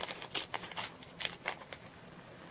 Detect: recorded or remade remade